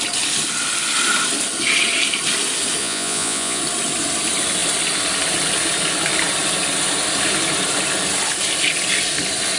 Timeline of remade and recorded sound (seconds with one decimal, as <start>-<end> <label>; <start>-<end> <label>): 0.0-2.8 recorded; 2.8-3.6 remade; 3.6-9.6 recorded